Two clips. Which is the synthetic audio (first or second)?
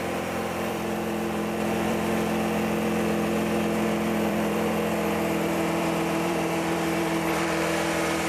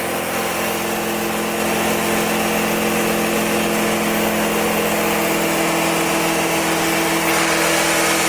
first